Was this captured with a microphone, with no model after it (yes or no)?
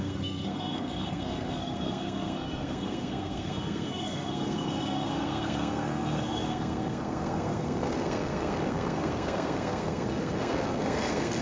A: no